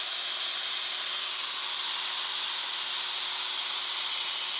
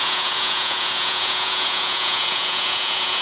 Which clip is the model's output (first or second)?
second